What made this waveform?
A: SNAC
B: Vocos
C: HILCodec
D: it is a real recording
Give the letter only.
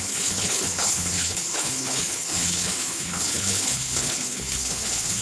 C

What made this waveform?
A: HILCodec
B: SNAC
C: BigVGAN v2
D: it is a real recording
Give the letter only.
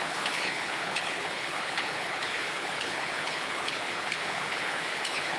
A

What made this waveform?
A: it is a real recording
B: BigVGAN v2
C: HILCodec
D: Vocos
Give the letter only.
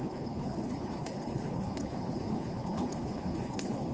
C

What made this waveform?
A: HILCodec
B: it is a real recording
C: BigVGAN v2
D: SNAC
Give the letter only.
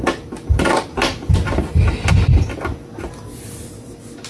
B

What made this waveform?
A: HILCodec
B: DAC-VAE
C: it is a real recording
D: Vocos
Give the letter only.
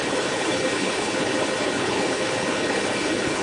A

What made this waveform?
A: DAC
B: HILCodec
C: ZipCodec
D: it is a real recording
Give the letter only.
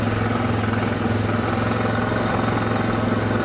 D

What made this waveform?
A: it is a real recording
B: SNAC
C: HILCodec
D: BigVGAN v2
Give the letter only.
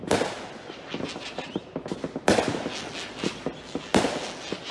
A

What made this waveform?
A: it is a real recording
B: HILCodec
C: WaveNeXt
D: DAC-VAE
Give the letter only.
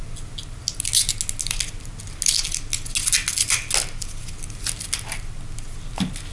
A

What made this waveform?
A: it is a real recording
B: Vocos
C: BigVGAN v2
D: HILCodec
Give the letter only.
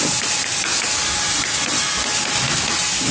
A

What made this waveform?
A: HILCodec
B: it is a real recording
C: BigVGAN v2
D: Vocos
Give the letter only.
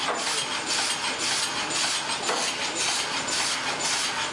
B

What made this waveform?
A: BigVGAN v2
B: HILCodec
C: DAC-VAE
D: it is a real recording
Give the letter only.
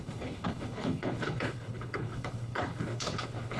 B